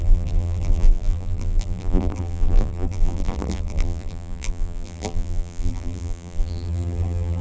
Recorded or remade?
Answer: remade